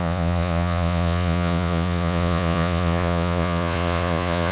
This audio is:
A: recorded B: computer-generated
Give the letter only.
B